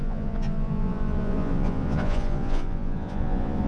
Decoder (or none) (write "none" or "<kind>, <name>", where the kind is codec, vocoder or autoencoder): vocoder, Vocos